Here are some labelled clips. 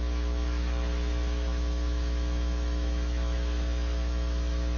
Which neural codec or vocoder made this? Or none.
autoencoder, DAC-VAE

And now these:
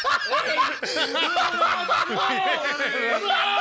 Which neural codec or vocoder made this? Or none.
none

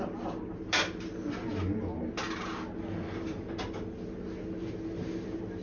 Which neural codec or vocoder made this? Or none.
none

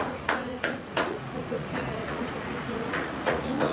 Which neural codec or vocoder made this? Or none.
vocoder, Vocos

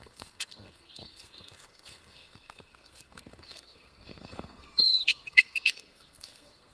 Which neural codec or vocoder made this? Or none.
codec, SNAC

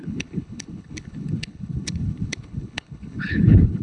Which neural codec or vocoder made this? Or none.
codec, HILCodec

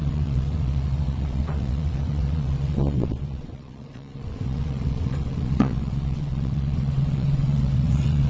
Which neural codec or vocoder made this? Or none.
vocoder, WaveNeXt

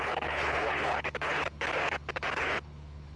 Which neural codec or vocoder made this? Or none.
codec, HILCodec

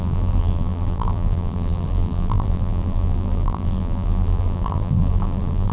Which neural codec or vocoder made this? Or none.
vocoder, BigVGAN v2